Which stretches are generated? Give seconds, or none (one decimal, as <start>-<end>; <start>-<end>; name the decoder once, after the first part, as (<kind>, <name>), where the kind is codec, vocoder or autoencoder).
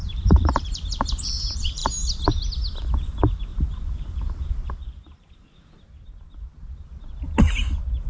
0.0-1.4 (vocoder, BigVGAN v2); 3.5-5.5